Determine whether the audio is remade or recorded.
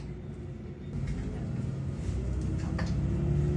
recorded